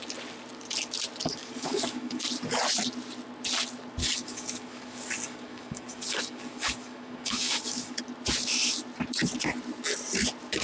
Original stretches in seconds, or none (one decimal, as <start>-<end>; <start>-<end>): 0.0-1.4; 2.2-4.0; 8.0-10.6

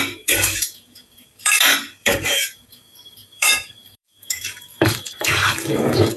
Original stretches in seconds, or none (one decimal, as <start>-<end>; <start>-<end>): none

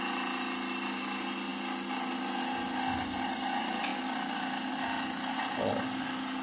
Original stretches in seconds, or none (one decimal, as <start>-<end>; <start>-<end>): 0.0-6.4